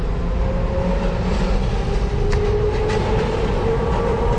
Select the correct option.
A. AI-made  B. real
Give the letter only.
B